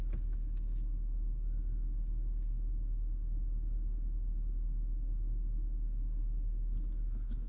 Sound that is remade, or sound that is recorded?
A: recorded